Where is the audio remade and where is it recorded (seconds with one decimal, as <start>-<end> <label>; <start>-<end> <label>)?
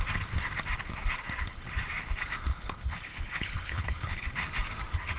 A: 0.0-2.5 recorded; 2.5-4.3 remade; 4.3-5.2 recorded